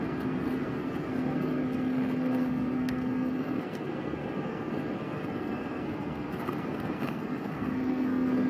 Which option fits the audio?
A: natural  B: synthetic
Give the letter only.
B